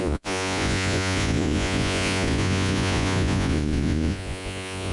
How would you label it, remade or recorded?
remade